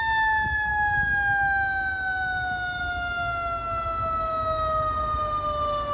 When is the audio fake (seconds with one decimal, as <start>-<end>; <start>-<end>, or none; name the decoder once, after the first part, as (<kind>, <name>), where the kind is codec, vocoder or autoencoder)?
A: none